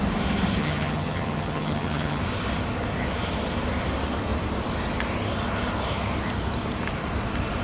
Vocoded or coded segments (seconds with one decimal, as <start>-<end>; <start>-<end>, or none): 0.6-2.2